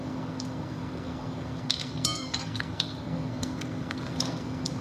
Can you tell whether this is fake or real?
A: fake